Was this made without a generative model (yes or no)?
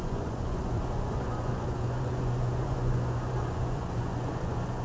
no